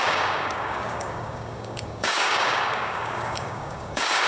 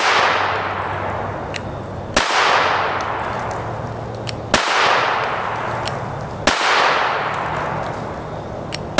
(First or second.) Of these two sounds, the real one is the second